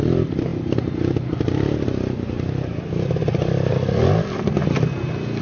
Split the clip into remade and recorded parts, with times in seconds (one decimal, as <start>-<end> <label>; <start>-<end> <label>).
0.0-5.4 recorded